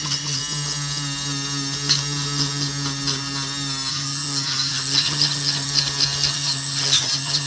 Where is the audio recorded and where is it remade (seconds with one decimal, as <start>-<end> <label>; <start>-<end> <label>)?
0.0-0.4 remade; 0.4-3.9 recorded; 3.9-5.7 remade; 5.7-6.3 recorded; 6.3-7.5 remade